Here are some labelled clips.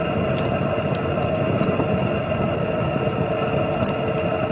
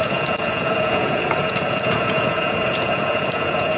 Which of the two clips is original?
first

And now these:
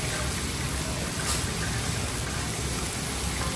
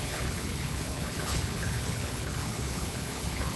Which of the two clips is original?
first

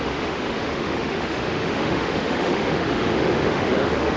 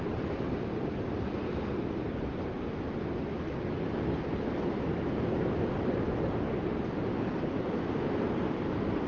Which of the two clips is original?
second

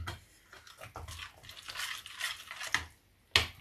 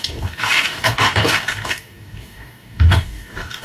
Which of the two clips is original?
first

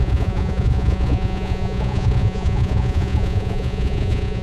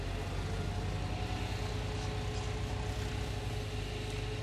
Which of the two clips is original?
second